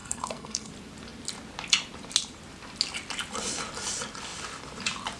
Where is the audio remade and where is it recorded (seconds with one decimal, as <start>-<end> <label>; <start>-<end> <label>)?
0.0-0.7 remade; 0.7-5.2 recorded